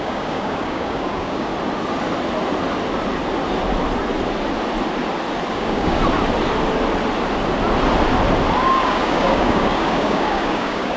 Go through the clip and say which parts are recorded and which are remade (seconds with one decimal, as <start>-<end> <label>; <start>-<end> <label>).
0.0-1.5 remade; 1.5-5.5 recorded; 5.5-6.0 remade; 6.0-8.6 recorded; 8.6-11.0 remade